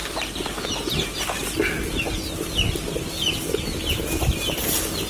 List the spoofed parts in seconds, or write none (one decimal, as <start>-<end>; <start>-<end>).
none